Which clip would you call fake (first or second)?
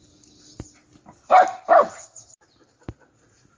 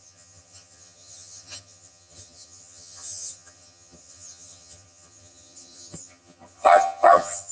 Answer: second